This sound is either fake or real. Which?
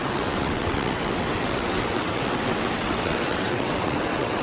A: fake